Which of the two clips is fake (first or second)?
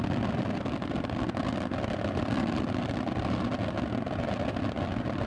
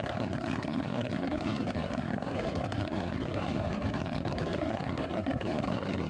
second